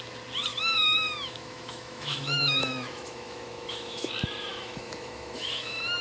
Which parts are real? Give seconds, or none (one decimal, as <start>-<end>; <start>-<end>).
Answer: 0.0-0.5; 4.1-4.5